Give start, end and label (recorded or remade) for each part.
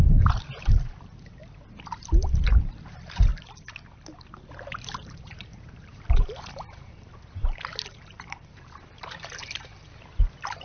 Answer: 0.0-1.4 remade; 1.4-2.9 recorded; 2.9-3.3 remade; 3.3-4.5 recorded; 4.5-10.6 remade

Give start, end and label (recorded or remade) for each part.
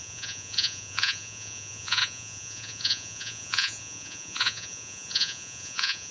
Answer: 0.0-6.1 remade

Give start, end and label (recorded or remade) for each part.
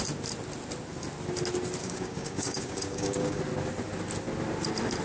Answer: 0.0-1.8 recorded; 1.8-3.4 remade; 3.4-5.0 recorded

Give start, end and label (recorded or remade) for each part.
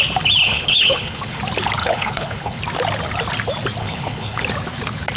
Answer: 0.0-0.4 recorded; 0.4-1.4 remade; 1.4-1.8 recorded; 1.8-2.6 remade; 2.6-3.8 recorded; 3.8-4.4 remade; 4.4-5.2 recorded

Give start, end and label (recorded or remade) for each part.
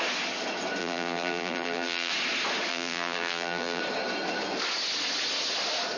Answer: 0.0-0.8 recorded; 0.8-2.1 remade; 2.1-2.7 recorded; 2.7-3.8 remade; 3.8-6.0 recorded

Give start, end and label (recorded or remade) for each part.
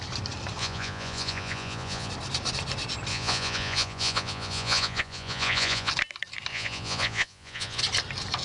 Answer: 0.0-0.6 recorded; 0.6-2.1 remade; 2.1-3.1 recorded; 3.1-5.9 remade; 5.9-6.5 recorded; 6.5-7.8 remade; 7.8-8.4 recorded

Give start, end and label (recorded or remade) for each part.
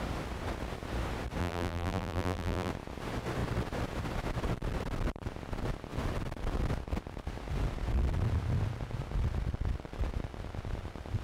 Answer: 0.0-1.4 recorded; 1.4-2.7 remade; 2.7-11.2 recorded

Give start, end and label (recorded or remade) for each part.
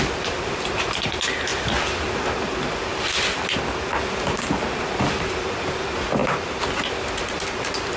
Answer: 0.0-1.5 remade; 1.5-4.8 recorded; 4.8-8.0 remade